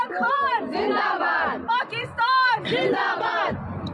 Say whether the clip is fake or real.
fake